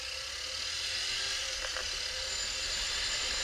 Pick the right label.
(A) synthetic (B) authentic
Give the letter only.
B